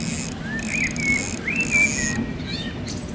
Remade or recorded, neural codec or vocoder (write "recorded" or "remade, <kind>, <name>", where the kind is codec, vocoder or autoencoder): recorded